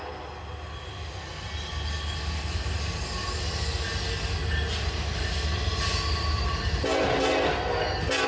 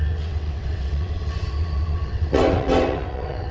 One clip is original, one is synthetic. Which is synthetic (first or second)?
second